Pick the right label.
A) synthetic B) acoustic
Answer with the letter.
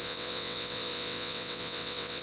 A